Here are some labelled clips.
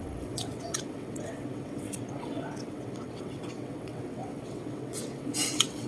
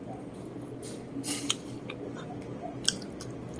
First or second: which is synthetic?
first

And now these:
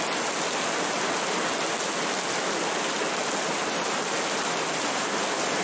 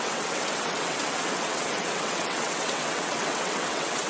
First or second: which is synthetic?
second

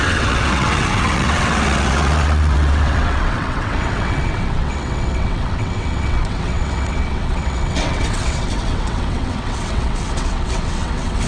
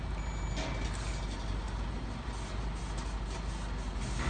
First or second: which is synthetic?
first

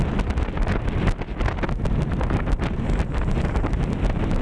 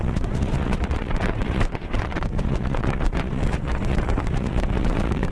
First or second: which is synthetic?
second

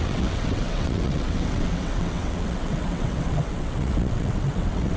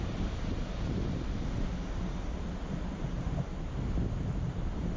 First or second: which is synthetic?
first